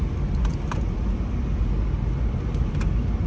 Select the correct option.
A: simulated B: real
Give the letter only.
B